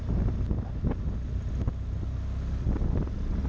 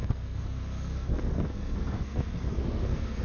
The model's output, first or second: second